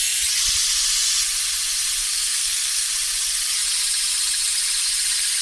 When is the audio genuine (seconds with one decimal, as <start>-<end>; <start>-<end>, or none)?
0.0-2.0; 2.9-5.4